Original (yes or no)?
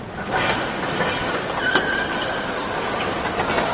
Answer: yes